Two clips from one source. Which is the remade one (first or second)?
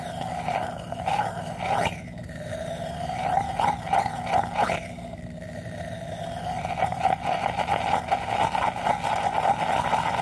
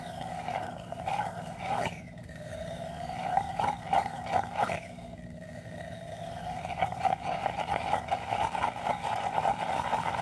second